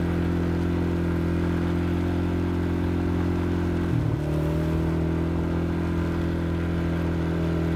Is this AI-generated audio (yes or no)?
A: no